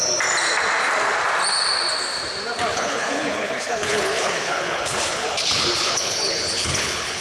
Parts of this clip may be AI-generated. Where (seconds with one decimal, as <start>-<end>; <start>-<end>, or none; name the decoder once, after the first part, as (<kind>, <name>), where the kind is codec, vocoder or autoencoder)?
2.7-7.2 (codec, HILCodec)